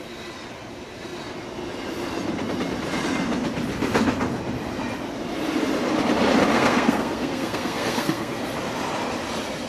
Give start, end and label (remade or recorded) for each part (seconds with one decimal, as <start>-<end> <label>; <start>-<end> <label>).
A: 0.0-6.5 recorded; 6.5-8.4 remade; 8.4-9.7 recorded